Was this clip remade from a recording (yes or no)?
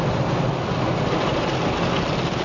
no